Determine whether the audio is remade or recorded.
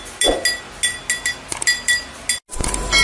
recorded